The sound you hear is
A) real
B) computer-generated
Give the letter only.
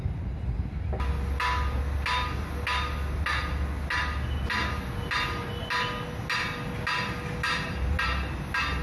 A